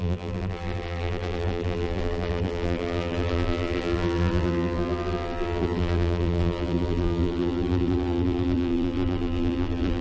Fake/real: fake